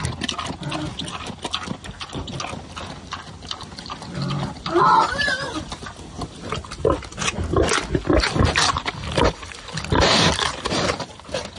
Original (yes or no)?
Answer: yes